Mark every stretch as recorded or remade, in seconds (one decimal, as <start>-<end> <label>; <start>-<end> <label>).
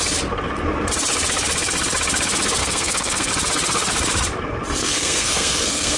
0.0-2.6 recorded; 2.6-3.3 remade; 3.3-4.8 recorded; 4.8-6.0 remade